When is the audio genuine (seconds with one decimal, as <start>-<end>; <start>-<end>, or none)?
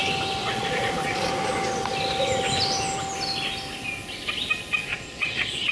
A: 0.0-0.4; 1.3-4.9